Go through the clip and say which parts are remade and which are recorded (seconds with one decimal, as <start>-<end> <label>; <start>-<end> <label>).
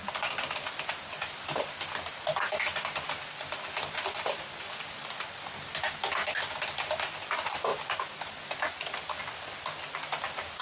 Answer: 0.0-10.6 recorded